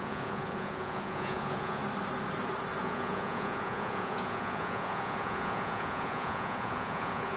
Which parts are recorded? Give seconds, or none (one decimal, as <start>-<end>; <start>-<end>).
1.8-2.8